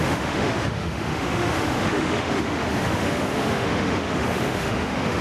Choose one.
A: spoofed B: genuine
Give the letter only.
A